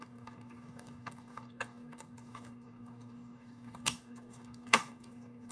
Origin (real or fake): fake